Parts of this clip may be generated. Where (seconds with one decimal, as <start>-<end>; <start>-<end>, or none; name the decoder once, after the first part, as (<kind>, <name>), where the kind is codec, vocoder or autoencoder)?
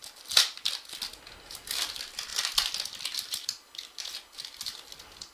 0.0-0.7 (vocoder, BigVGAN v2); 2.3-4.0